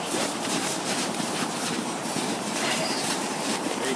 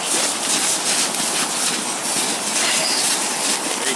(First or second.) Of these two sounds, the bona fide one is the second